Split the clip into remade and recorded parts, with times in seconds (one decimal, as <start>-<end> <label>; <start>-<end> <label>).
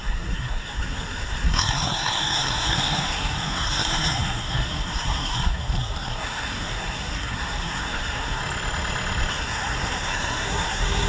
0.0-8.4 remade; 8.4-9.3 recorded; 9.3-11.1 remade